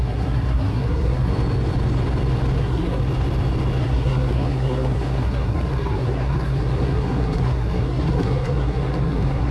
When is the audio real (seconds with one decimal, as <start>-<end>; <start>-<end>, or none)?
1.3-2.6; 3.0-3.8